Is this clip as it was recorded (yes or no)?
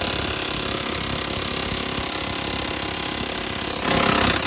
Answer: yes